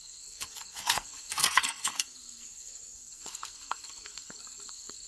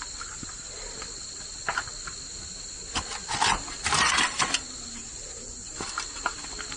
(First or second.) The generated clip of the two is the first